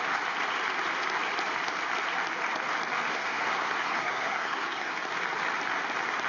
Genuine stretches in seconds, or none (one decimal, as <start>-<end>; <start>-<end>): 0.0-3.1; 4.9-6.3